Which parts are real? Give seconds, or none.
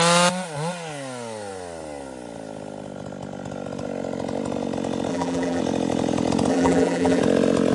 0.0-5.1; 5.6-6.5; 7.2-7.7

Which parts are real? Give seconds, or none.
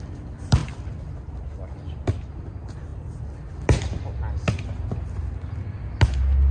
0.0-6.5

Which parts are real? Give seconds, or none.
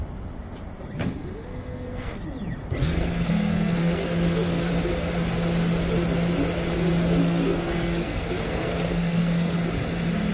0.0-1.0; 2.2-2.8; 4.7-7.2; 9.6-10.3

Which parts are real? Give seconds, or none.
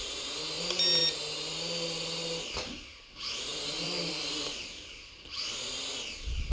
0.0-3.5; 5.9-6.5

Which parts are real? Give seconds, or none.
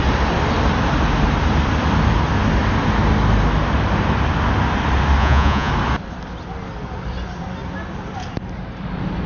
0.0-5.2; 5.7-9.3